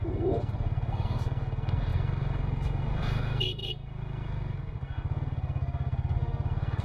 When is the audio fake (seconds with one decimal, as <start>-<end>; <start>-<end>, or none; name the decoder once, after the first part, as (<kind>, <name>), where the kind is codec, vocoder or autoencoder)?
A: 0.0-6.8 (codec, SNAC)